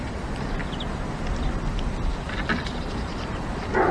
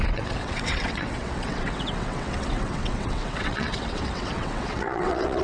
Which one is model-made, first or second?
second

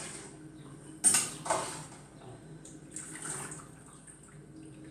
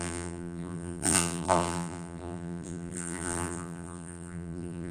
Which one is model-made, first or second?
second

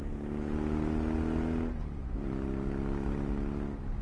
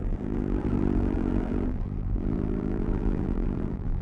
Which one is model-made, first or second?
second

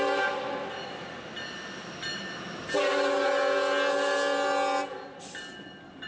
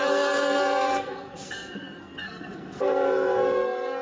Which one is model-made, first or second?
second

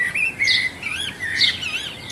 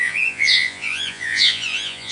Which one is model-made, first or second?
second